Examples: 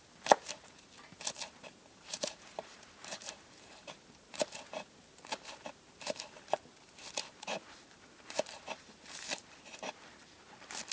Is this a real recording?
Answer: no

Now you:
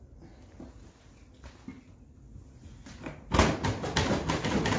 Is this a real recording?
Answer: yes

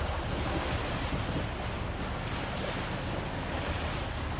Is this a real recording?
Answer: yes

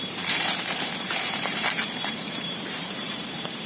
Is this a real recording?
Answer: no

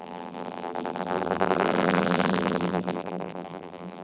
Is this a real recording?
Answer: no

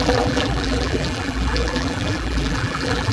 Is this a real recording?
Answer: no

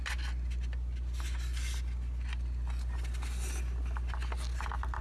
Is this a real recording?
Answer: yes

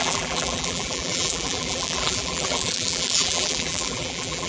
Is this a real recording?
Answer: no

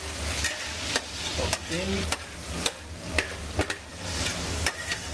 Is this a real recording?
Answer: no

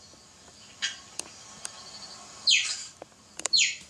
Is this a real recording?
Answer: no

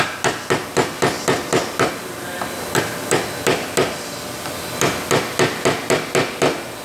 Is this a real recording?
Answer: yes